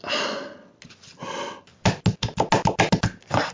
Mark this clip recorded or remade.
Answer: recorded